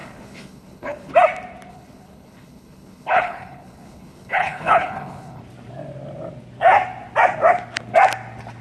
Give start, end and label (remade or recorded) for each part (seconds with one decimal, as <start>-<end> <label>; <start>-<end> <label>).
0.0-1.1 remade; 1.1-1.7 recorded; 1.7-5.4 remade; 5.4-8.6 recorded